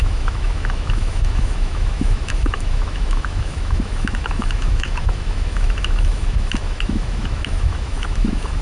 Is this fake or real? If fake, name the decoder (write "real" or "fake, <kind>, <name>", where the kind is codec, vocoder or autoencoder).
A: fake, autoencoder, DAC-VAE